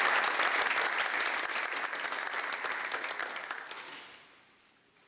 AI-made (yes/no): no